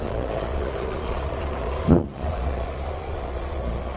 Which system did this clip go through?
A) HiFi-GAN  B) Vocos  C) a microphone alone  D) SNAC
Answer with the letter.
B